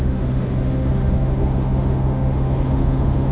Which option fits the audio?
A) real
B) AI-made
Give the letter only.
B